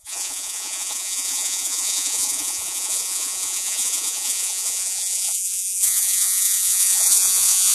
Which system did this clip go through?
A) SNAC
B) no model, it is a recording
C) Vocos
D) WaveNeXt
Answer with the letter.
C